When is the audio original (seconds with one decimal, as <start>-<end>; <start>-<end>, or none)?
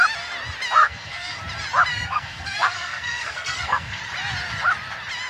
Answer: 0.0-0.8; 1.4-1.9; 4.0-5.3